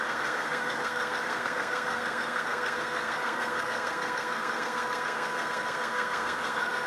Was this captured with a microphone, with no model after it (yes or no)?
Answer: no